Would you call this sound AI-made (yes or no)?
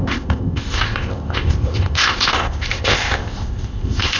yes